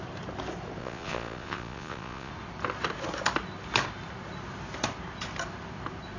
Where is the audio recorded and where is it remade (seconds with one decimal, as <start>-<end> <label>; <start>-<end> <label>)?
0.0-0.8 recorded; 0.8-2.3 remade; 2.3-6.2 recorded